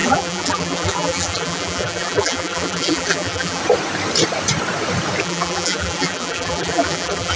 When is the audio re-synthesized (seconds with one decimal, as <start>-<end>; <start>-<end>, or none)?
0.0-3.6; 5.2-7.4